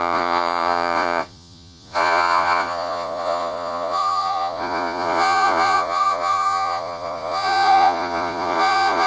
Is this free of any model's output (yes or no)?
no